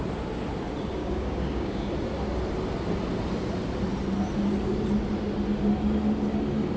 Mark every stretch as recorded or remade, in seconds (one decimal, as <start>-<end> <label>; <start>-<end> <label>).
0.0-1.0 recorded; 1.0-1.9 remade; 1.9-6.8 recorded